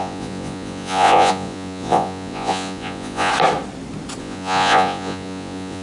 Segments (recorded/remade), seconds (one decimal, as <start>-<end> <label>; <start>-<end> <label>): 0.0-3.3 remade; 3.3-4.2 recorded; 4.2-5.8 remade